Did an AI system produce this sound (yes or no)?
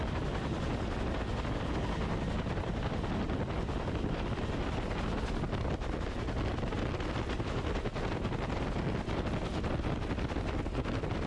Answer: no